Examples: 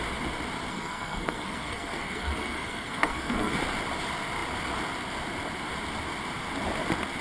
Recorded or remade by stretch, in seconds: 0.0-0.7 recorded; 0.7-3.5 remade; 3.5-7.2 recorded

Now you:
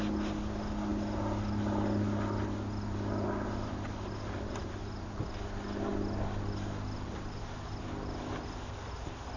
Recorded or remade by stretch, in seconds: 0.0-9.4 recorded

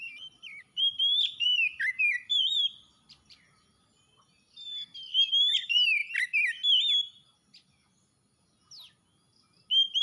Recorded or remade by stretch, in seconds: 0.0-4.9 remade; 4.9-5.4 recorded; 5.4-6.0 remade; 6.0-10.0 recorded

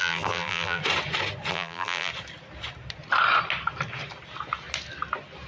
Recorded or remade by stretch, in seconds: 0.0-0.8 remade; 0.8-1.5 recorded; 1.5-2.1 remade; 2.1-5.5 recorded

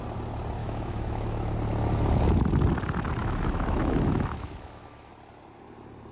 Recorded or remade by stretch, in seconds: 0.0-0.6 recorded; 0.6-1.5 remade; 1.5-3.2 recorded; 3.2-5.1 remade; 5.1-6.1 recorded

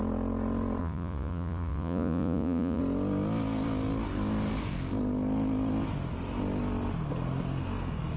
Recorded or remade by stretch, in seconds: 0.0-0.8 recorded; 0.8-2.8 remade; 2.8-8.2 recorded

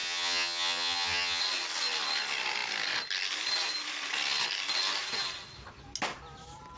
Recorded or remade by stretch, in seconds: 0.0-1.4 remade; 1.4-6.8 recorded

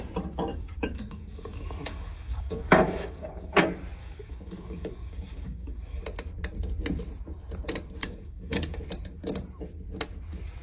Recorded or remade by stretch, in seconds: 0.0-0.5 recorded; 0.5-3.6 remade; 3.6-4.0 recorded; 4.0-6.0 remade; 6.0-8.0 recorded; 8.0-8.8 remade; 8.8-10.6 recorded